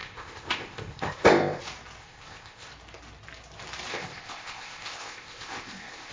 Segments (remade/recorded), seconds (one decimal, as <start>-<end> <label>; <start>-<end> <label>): 0.0-1.6 remade; 1.6-2.0 recorded; 2.0-2.7 remade; 2.7-3.9 recorded; 3.9-6.1 remade